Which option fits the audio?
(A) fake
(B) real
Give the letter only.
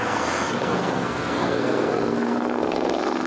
A